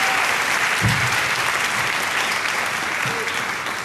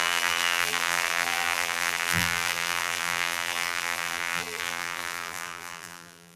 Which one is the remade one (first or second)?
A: second